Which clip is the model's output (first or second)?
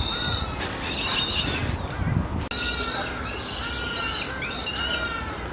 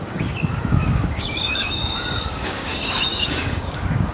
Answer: second